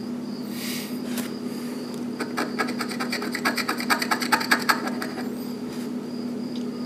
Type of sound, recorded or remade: recorded